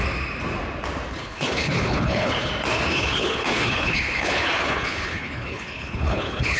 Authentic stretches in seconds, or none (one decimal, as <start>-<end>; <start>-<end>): 0.0-1.1; 2.5-2.9